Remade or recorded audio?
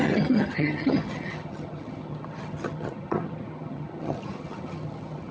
remade